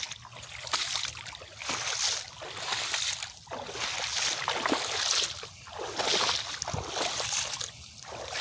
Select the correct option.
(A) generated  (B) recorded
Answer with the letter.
B